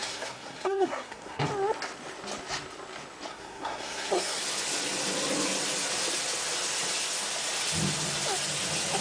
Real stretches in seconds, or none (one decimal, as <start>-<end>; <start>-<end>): 1.5-3.3; 4.4-9.0